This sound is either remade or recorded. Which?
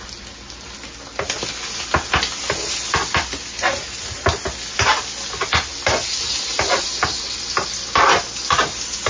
recorded